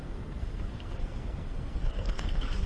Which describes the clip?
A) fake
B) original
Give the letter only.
A